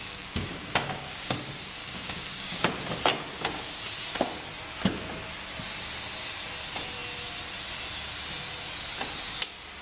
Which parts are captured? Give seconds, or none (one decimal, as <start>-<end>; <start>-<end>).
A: 1.3-1.8; 2.7-9.8